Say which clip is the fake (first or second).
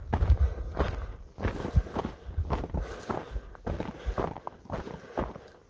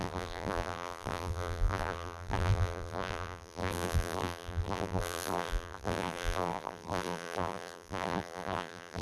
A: second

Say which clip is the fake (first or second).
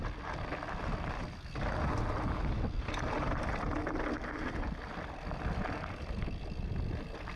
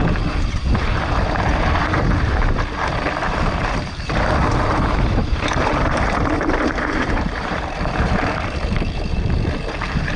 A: second